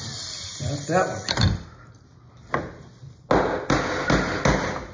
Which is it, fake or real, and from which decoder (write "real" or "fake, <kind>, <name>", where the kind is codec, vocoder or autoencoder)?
real